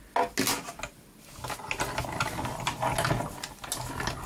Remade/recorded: recorded